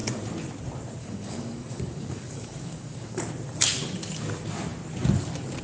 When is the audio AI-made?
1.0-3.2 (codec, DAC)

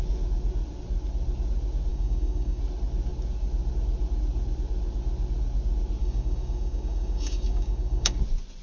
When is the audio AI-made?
1.9-2.6 (codec, DAC); 6.0-8.2